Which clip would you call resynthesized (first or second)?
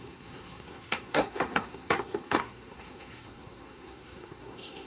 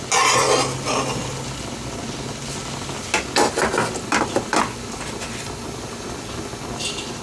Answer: first